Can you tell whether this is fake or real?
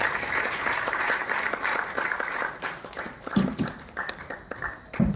fake